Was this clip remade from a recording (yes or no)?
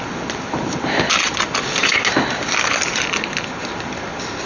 no